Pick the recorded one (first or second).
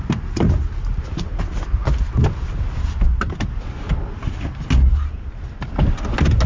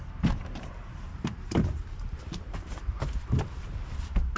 first